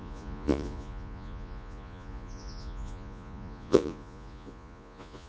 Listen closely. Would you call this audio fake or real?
fake